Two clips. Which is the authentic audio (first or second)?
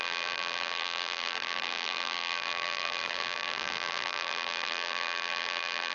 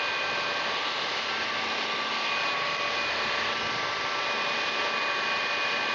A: second